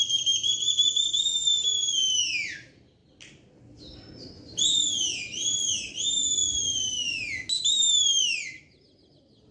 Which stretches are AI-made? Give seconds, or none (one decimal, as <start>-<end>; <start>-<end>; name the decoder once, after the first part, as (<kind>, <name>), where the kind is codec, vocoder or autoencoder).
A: none